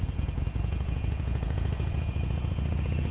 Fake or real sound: fake